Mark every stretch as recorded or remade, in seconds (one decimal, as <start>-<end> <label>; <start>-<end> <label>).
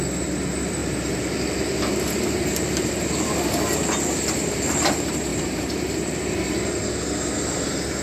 0.0-0.8 recorded; 0.8-3.5 remade; 3.5-5.3 recorded; 5.3-6.2 remade; 6.2-8.0 recorded